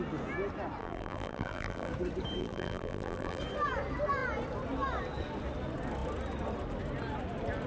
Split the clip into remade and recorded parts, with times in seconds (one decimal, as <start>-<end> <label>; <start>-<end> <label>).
0.0-0.8 recorded; 0.8-1.9 remade; 1.9-2.4 recorded; 2.4-3.4 remade; 3.4-7.7 recorded